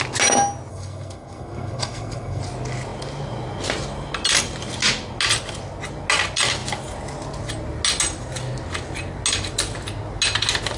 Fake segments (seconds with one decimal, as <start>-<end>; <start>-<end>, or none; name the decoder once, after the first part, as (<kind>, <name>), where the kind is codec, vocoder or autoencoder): 0.7-2.4 (codec, SNAC)